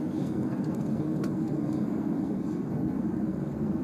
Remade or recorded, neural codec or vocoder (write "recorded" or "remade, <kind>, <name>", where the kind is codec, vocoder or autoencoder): remade, codec, SNAC